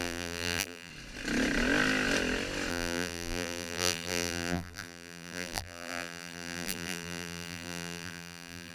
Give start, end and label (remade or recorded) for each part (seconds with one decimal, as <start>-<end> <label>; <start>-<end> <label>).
0.0-0.9 remade; 0.9-2.7 recorded; 2.7-8.7 remade